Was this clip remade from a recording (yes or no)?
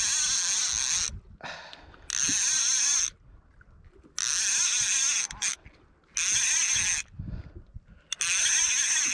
no